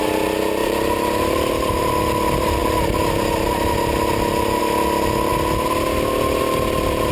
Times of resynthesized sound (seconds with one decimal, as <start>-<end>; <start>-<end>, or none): 0.6-1.9